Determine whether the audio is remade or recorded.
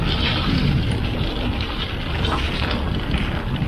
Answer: recorded